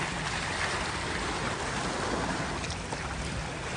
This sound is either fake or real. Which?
real